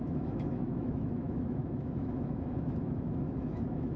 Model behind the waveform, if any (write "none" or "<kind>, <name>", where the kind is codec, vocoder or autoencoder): autoencoder, DAC-VAE